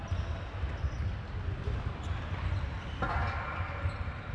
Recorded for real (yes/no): yes